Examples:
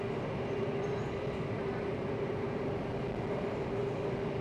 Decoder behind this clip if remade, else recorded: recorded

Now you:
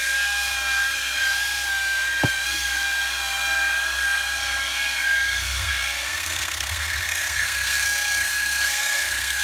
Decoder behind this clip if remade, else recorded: remade, codec, SNAC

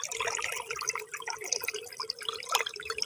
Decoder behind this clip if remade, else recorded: recorded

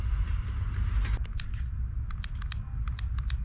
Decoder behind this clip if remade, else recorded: recorded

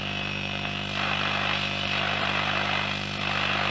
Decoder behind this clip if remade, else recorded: recorded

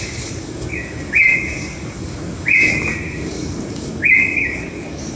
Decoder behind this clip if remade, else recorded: remade, codec, DAC